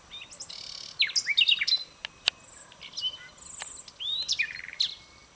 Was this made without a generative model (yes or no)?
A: yes